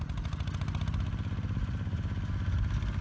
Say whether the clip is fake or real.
real